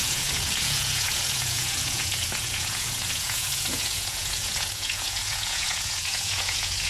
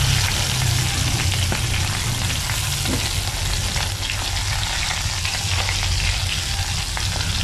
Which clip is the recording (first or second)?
second